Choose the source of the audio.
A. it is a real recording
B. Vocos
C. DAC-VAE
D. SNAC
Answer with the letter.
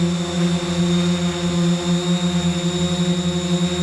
A